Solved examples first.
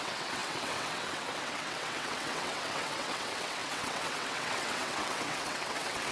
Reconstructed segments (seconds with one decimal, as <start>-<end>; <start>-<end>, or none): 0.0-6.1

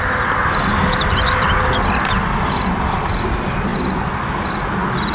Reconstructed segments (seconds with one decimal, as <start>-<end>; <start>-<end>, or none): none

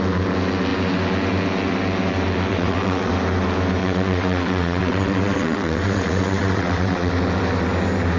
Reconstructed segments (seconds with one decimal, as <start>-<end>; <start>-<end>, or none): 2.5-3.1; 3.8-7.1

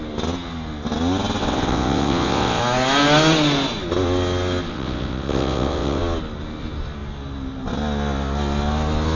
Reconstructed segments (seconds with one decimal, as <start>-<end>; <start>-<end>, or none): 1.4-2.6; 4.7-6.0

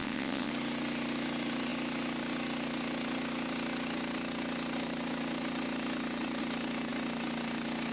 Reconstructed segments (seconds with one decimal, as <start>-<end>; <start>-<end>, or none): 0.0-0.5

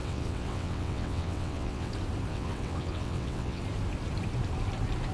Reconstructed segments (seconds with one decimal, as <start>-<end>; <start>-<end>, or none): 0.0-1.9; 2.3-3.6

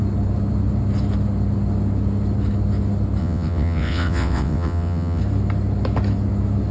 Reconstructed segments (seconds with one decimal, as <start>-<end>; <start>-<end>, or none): 3.2-5.2

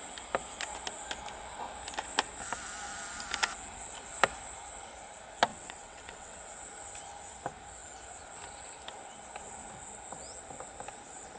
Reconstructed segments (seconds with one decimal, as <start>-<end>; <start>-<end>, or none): 5.5-6.4